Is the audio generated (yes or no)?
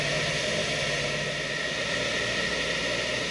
no